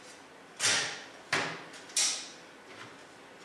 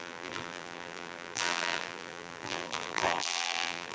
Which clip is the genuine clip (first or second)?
first